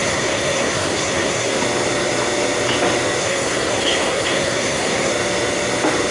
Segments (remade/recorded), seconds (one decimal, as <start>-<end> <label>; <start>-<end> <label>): 0.0-1.6 remade; 1.6-3.2 recorded; 3.2-5.1 remade; 5.1-6.1 recorded